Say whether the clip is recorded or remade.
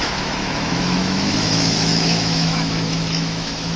remade